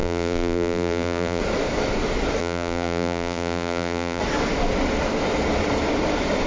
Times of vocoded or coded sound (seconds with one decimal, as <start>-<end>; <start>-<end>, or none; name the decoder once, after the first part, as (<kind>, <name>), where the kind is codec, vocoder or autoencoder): 0.0-1.4 (vocoder, BigVGAN v2); 2.4-4.2